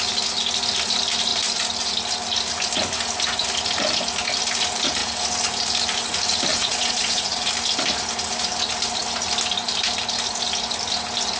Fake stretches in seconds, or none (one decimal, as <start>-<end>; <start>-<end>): 6.5-7.5